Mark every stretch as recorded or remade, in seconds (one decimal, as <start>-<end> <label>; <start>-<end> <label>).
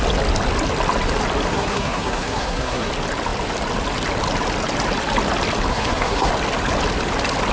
0.0-1.5 recorded; 1.5-2.9 remade; 2.9-5.7 recorded; 5.7-6.3 remade; 6.3-7.5 recorded